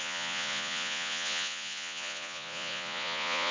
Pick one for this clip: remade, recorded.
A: remade